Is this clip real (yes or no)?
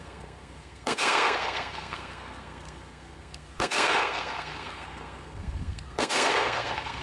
no